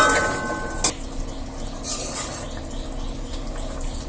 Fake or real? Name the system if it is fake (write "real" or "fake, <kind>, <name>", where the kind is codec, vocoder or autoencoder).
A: real